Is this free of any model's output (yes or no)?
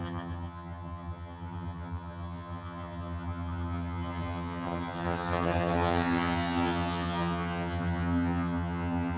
no